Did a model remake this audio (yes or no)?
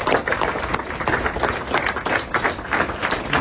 no